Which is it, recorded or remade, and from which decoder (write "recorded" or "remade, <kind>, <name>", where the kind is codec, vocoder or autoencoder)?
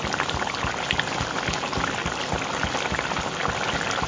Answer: recorded